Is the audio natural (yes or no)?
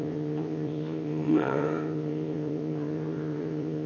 no